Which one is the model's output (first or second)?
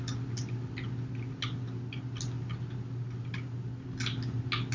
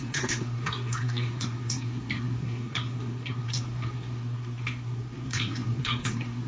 second